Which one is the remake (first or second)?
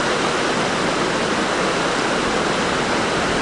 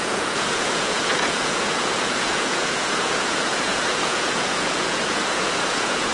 second